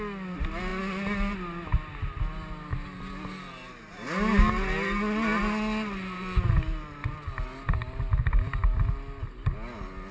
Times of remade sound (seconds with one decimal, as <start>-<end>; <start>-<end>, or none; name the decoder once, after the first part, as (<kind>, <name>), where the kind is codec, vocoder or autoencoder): none